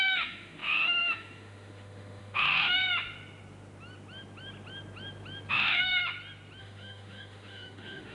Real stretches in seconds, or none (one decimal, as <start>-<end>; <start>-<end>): 2.8-5.5; 6.0-6.6